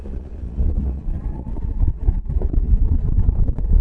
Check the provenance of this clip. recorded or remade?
remade